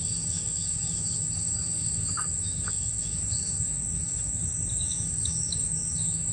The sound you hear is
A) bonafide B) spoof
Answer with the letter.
B